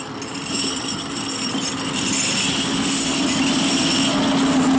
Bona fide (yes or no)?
yes